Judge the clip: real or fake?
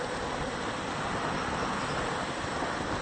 real